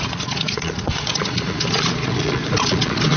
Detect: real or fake fake